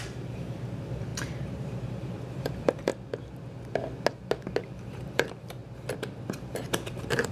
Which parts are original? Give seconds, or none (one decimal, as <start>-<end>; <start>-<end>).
2.9-4.8; 5.6-6.4